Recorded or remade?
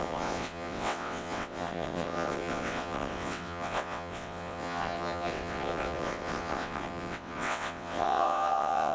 remade